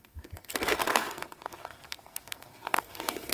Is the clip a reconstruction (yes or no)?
yes